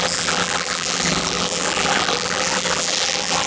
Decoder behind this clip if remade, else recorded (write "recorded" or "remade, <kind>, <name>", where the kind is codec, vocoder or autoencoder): remade, vocoder, BigVGAN v2